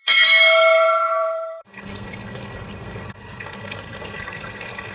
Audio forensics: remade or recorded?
remade